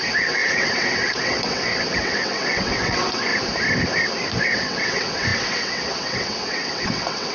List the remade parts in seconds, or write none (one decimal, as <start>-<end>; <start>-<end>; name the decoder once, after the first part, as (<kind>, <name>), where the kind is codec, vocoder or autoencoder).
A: 0.0-3.3 (vocoder, WaveNeXt); 4.4-7.3